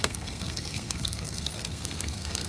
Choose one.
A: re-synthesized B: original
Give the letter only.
A